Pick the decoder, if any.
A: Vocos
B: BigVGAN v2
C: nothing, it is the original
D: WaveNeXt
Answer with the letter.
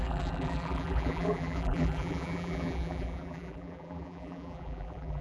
B